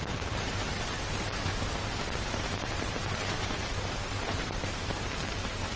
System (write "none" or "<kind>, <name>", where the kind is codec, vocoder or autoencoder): vocoder, BigVGAN v2